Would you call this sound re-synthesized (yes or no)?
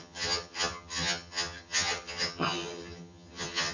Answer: yes